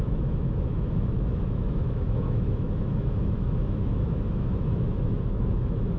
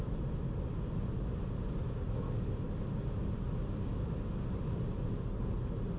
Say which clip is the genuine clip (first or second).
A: second